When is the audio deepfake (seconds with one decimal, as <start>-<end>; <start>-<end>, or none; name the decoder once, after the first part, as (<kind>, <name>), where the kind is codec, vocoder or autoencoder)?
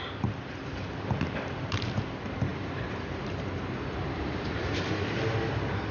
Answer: 2.5-5.2 (vocoder, BigVGAN v2)